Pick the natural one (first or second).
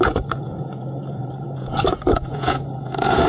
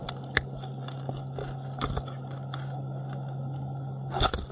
second